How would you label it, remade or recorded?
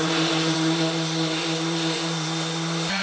remade